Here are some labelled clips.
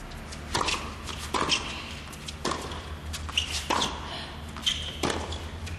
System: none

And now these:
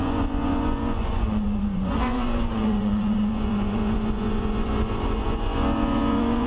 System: vocoder, Vocos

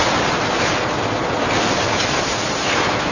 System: none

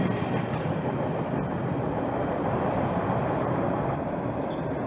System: none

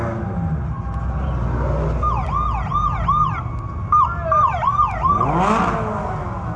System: none